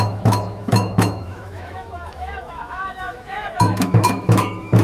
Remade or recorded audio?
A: remade